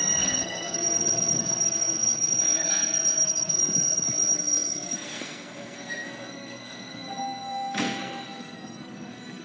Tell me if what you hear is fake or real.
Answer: fake